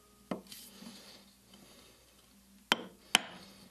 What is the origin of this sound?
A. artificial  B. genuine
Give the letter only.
B